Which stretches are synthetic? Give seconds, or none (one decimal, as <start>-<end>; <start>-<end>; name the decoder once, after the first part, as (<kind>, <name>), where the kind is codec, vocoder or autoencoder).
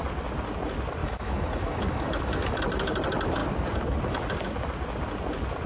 1.0-2.6 (autoencoder, DAC-VAE)